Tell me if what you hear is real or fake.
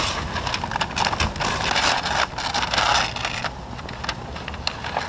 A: real